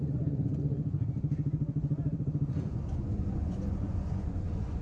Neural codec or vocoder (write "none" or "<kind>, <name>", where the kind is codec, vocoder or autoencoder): vocoder, Vocos